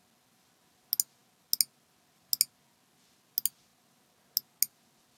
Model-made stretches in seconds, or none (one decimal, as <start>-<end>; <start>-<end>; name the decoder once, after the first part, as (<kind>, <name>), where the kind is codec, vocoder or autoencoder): none